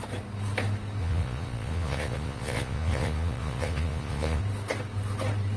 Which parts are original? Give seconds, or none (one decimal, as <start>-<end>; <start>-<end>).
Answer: 0.0-1.0; 4.4-5.6